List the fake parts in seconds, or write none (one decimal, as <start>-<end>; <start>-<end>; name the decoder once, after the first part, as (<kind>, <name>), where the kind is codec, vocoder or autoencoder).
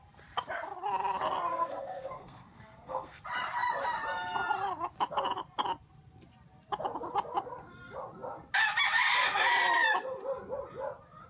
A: 1.5-3.2 (codec, SNAC)